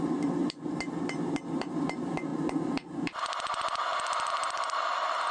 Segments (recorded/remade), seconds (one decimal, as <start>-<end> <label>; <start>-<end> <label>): 0.0-5.3 recorded